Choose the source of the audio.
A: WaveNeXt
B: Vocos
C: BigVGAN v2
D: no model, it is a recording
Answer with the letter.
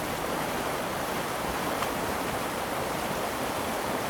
C